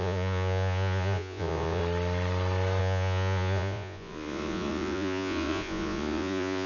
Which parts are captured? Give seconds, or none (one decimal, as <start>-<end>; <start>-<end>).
1.8-2.8